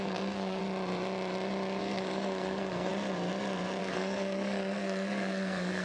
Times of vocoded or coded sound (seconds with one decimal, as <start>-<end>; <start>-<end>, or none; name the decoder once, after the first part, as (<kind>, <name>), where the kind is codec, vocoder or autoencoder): 0.0-0.6 (codec, SNAC); 1.8-2.9; 3.8-5.8

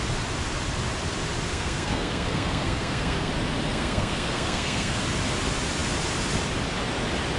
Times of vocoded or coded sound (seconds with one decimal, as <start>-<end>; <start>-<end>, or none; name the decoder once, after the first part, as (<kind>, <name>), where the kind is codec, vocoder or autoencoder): 1.5-3.3 (codec, SNAC); 3.7-5.0

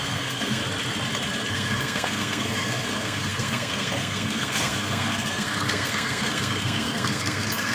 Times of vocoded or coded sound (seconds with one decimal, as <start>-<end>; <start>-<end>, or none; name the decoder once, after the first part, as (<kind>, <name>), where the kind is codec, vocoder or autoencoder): 0.0-0.6 (codec, SNAC); 1.5-7.7

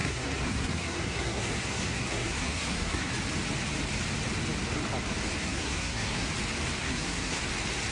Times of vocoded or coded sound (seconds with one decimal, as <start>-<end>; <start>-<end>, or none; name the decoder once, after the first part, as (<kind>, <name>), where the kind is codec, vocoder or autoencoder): 0.0-3.1 (codec, SNAC); 5.4-6.3; 6.8-7.4

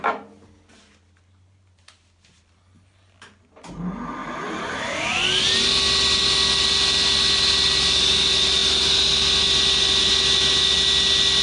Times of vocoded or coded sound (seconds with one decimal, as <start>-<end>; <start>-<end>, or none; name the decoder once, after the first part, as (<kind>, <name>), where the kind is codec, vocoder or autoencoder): none

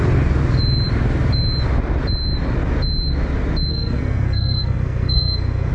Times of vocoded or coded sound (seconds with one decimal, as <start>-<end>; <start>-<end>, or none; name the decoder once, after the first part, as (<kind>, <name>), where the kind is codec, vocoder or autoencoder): 3.7-5.7 (codec, SNAC)

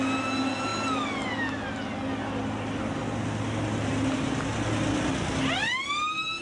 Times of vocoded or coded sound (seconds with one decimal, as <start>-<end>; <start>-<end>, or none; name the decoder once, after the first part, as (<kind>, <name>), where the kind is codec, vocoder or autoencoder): none

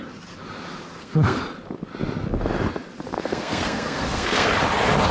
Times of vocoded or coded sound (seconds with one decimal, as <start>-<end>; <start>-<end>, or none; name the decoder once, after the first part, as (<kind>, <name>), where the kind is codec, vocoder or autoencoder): 0.9-1.4 (codec, SNAC); 3.1-4.5